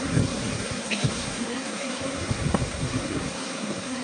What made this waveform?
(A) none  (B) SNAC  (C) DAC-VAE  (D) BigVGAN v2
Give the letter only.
B